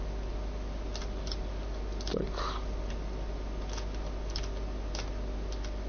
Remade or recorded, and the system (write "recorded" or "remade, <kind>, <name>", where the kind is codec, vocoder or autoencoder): recorded